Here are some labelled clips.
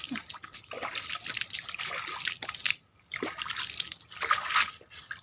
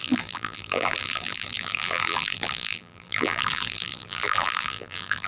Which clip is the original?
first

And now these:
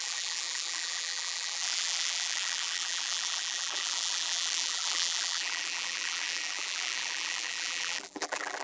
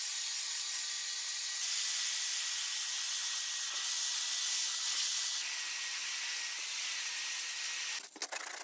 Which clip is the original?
second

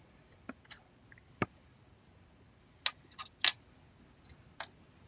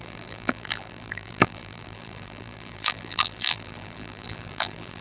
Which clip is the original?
first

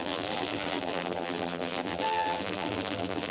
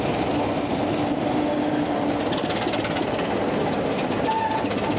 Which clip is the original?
second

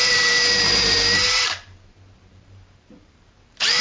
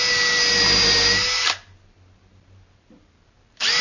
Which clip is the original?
second